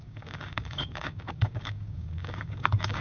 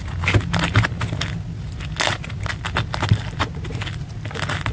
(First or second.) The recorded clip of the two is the second